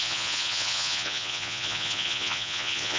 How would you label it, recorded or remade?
remade